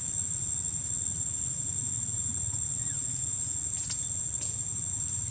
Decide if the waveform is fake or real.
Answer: fake